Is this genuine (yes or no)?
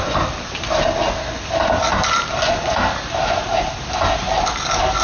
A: yes